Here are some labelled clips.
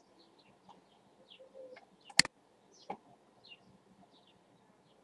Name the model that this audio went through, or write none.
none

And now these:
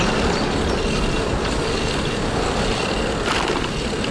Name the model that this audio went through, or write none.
none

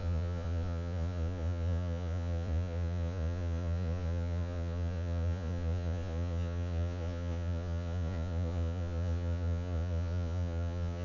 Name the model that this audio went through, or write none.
vocoder, Vocos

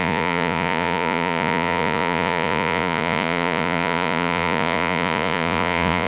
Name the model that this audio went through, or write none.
vocoder, Vocos